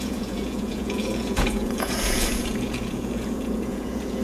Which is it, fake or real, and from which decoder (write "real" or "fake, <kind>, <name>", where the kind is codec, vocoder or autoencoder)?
fake, vocoder, Vocos